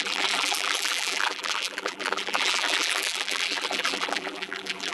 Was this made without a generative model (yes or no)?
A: no